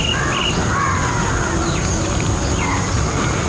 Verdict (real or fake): real